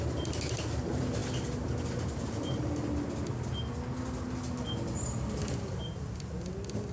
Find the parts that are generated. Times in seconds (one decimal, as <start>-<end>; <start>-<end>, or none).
none